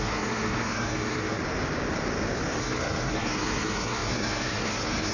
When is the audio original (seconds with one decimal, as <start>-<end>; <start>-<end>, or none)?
1.4-2.6

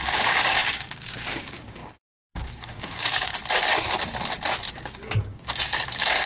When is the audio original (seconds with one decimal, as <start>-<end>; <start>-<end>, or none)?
3.4-4.7